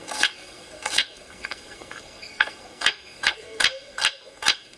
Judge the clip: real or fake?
fake